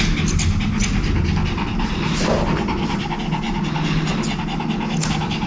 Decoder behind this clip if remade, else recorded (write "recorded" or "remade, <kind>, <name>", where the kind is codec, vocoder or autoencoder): recorded